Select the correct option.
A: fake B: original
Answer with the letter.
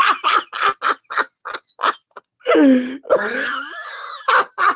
B